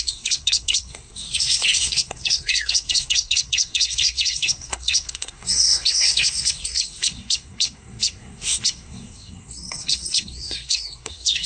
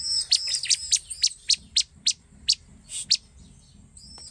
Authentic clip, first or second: second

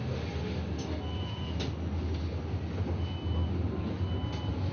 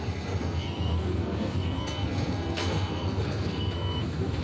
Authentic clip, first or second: first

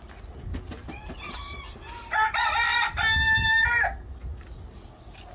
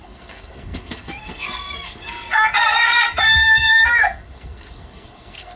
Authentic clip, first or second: first